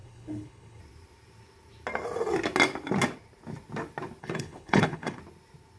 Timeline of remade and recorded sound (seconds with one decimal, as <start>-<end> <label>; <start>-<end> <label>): 0.0-0.8 remade; 0.8-4.2 recorded; 4.2-5.2 remade; 5.2-5.8 recorded